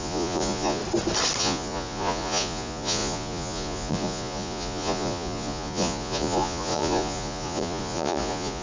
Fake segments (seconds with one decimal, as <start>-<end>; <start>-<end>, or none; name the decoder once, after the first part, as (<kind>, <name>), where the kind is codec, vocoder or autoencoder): 0.0-0.8 (vocoder, Vocos); 1.4-8.6